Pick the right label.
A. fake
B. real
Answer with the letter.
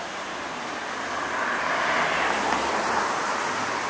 B